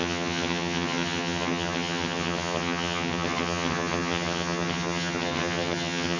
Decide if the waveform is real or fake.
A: fake